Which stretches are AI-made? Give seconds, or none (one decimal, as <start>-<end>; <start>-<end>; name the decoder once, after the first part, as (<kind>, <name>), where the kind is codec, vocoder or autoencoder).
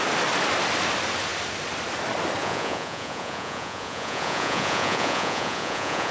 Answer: 2.4-6.1 (vocoder, Vocos)